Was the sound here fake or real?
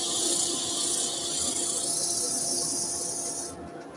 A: real